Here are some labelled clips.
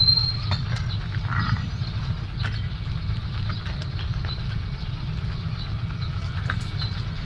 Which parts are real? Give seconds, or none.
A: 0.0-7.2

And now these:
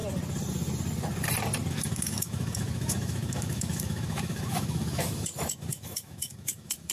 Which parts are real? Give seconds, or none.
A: 0.0-1.7

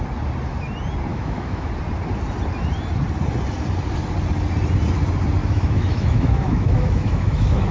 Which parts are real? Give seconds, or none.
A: 0.0-1.1; 1.7-5.4

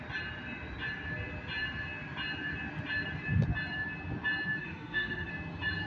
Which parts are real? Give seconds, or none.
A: 0.0-4.6; 5.3-5.9

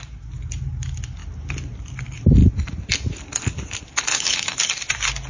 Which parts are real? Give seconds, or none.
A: 0.0-4.1; 4.6-5.3

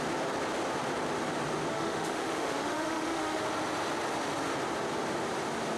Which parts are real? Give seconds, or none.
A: 0.0-1.7; 3.4-5.8